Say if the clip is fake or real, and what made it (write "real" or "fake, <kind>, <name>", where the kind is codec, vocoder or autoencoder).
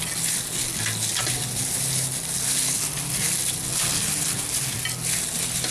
real